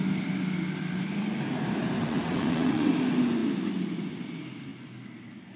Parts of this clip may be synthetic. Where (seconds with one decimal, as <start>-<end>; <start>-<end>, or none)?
2.0-2.9